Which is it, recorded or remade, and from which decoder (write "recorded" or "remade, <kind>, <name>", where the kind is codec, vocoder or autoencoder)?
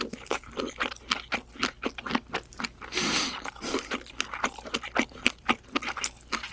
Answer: recorded